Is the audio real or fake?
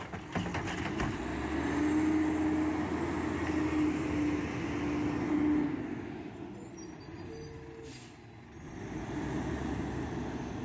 real